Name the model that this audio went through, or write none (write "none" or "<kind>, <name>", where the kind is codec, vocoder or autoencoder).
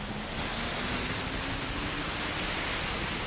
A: none